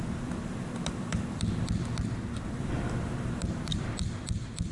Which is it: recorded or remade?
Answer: remade